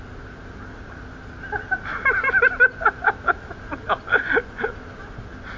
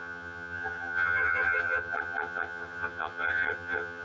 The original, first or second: first